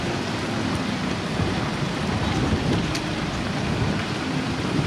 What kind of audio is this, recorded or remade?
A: recorded